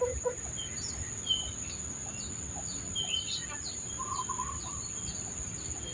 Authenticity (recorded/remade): recorded